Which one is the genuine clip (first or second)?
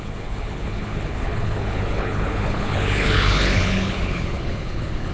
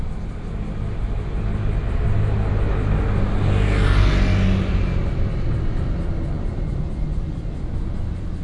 second